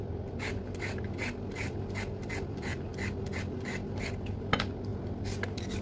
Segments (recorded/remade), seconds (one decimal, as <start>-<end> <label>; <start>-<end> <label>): 0.0-5.8 recorded